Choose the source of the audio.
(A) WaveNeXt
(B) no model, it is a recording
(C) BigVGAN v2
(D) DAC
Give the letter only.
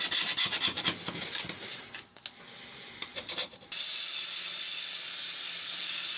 B